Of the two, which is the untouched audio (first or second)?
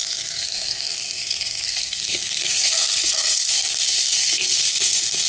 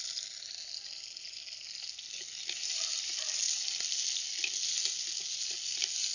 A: second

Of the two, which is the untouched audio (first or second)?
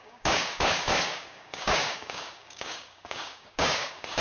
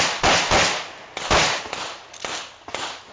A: second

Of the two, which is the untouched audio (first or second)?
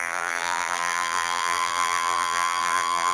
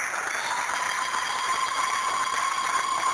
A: second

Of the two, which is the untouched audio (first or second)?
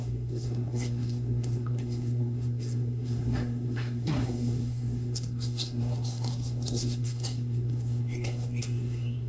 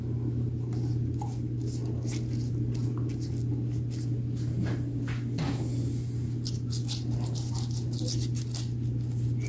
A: second